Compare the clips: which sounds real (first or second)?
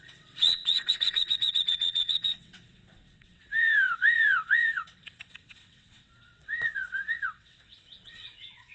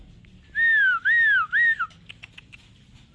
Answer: second